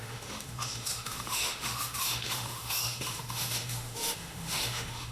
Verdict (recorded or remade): remade